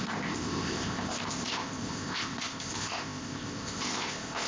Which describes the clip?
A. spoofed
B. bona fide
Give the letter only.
A